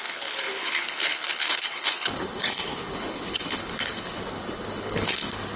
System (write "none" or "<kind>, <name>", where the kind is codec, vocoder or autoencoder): codec, HILCodec